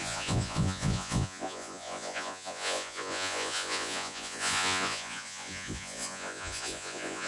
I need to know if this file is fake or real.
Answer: fake